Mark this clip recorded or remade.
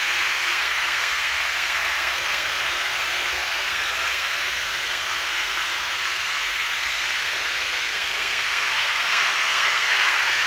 remade